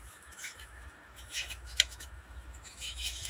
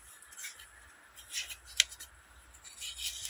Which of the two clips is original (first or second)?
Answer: second